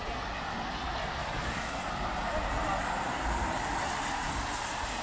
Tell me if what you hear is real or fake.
real